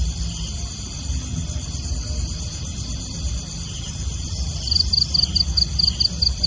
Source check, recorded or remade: recorded